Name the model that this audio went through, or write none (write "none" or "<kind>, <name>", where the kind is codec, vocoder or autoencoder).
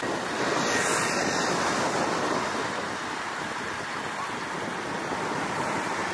vocoder, BigVGAN v2